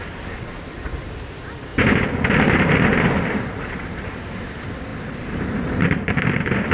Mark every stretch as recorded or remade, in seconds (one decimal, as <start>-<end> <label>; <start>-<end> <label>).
0.0-6.7 recorded